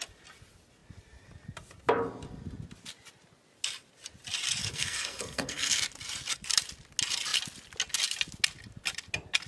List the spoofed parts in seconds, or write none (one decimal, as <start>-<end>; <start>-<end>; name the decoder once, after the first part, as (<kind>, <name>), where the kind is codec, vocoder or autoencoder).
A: 4.6-5.8 (codec, SNAC)